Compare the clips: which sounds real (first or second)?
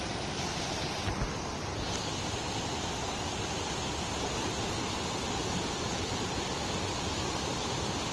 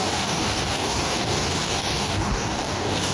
first